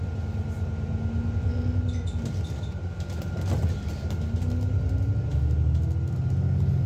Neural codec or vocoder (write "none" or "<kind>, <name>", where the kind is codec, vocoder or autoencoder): none